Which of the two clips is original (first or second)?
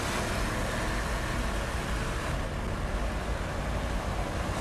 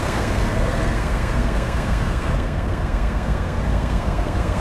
first